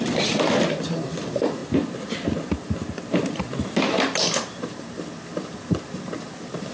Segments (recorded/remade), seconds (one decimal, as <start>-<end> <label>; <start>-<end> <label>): 0.0-1.6 remade; 1.6-3.8 recorded; 3.8-6.7 remade